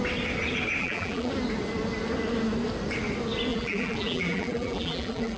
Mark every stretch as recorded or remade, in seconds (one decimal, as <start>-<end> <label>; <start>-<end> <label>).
0.0-0.8 recorded; 0.8-1.3 remade; 1.3-3.5 recorded; 3.5-5.4 remade